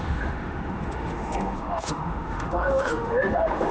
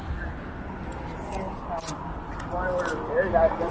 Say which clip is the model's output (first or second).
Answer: first